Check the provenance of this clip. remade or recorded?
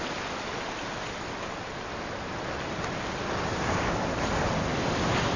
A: recorded